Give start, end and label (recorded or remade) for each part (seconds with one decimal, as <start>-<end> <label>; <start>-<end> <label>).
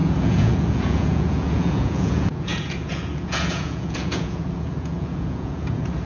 0.0-6.1 remade